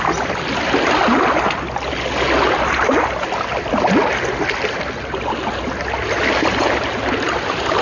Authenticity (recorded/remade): recorded